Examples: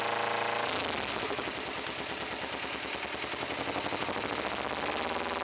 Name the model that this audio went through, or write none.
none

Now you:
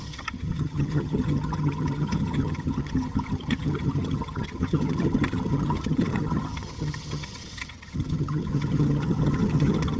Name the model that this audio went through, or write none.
vocoder, HiFi-GAN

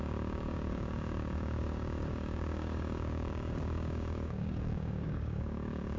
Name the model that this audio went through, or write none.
codec, DAC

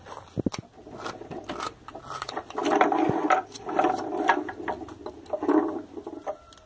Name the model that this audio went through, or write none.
none